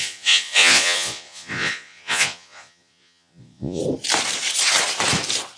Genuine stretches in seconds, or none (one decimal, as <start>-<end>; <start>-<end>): 3.8-5.6